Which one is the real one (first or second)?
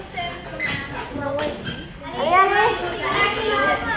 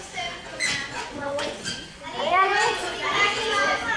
first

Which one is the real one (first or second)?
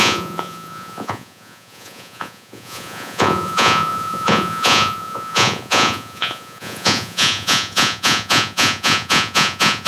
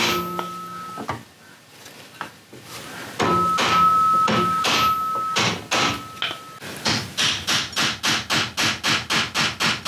second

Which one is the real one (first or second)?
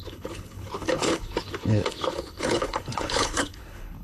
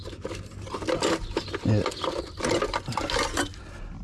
second